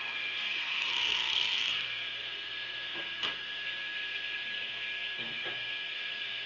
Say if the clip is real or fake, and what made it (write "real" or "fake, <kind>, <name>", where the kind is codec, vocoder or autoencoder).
fake, codec, SNAC